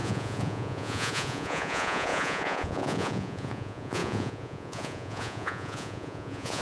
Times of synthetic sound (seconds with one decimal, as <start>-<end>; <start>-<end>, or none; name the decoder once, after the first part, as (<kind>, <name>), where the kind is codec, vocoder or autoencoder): 0.0-6.6 (vocoder, Vocos)